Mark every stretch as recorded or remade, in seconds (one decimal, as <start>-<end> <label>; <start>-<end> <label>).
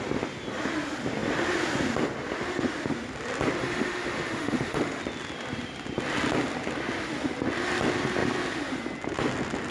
0.0-3.6 recorded; 3.6-5.0 remade; 5.0-9.7 recorded